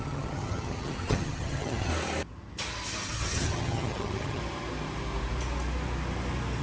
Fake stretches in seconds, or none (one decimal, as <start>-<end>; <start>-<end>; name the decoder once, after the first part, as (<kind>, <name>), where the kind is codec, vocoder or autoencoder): 0.0-1.9 (vocoder, HiFi-GAN); 3.1-4.4

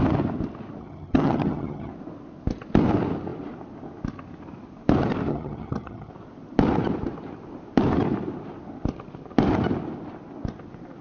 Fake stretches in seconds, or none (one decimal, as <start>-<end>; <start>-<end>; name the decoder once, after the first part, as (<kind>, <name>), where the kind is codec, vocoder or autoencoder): 0.8-1.9 (vocoder, HiFi-GAN); 5.3-6.1

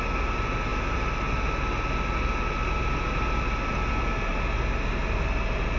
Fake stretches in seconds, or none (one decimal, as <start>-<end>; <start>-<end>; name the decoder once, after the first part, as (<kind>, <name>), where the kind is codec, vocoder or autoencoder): none

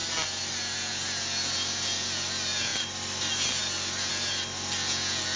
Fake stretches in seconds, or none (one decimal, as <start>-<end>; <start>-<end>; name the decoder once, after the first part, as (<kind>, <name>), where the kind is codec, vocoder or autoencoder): none